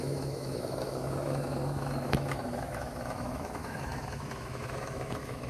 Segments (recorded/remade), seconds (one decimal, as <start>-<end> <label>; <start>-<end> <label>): 0.0-5.5 remade